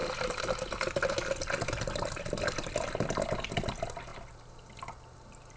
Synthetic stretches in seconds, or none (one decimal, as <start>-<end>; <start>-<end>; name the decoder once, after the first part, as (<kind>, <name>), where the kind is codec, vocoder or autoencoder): 0.0-2.8 (vocoder, BigVGAN v2)